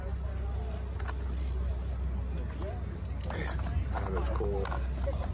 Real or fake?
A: real